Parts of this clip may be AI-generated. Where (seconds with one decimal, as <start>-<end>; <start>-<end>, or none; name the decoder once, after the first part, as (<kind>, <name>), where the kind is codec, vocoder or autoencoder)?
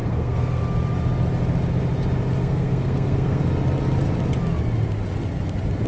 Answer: 0.0-0.6 (codec, SNAC); 2.4-3.4